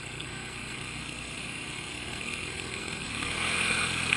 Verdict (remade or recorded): remade